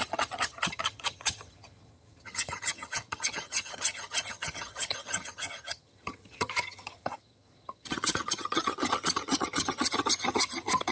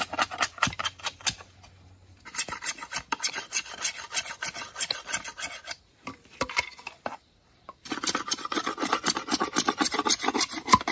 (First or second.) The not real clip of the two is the first